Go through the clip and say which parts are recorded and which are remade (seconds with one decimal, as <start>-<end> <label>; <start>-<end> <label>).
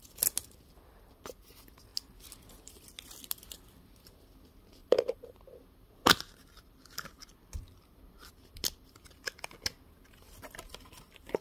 0.0-4.8 recorded; 4.8-5.4 remade; 5.4-11.4 recorded